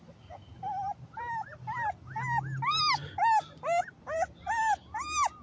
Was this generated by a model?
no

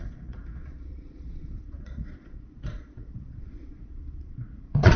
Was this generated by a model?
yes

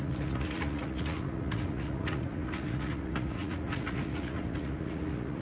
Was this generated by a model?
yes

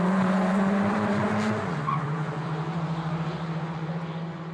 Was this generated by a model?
yes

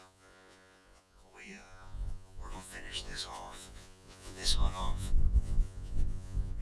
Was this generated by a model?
yes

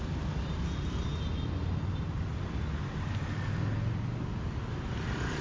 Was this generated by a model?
no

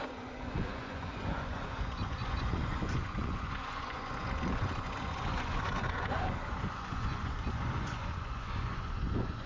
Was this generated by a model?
yes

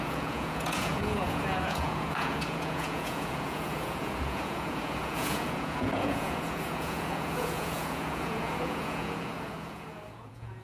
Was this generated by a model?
yes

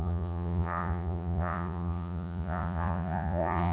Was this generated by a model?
yes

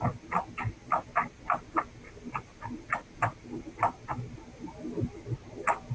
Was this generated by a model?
no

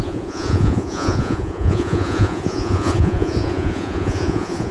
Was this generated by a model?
yes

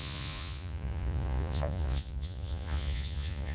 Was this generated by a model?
yes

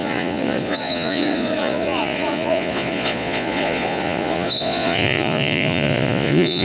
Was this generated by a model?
yes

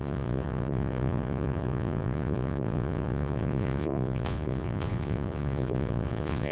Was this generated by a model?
yes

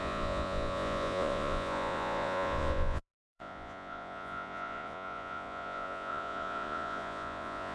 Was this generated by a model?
yes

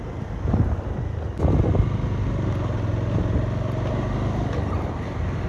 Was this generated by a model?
no